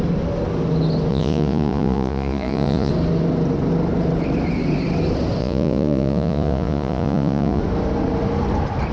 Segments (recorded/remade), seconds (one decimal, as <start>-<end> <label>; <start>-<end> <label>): 0.0-1.1 recorded; 1.1-2.9 remade; 2.9-5.4 recorded; 5.4-7.6 remade; 7.6-8.9 recorded